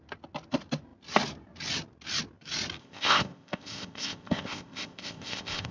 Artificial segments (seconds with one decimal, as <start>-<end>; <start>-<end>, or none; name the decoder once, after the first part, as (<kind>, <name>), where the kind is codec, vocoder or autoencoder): 2.8-5.7 (codec, ZipCodec)